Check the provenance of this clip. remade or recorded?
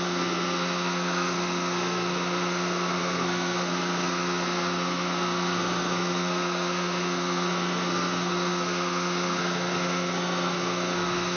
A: remade